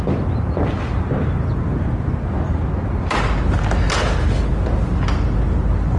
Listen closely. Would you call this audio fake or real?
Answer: real